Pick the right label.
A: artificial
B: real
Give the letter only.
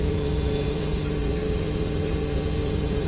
A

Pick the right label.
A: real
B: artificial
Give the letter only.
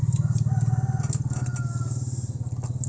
A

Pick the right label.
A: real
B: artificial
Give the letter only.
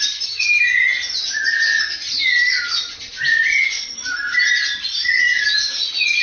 A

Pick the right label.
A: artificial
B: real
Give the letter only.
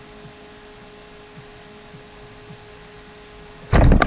B